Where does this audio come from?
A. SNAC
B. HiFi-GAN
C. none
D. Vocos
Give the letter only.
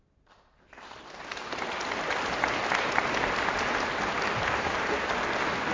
C